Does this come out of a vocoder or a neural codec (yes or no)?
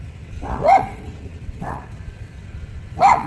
yes